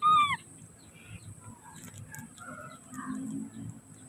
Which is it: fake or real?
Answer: real